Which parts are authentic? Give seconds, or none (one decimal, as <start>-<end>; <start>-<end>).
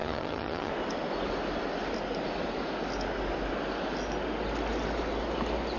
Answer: 0.7-5.8